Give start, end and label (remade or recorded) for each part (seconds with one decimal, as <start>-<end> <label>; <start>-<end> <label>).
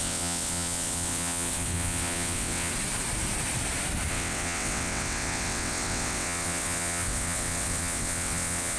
0.0-2.7 remade; 2.7-4.1 recorded; 4.1-8.8 remade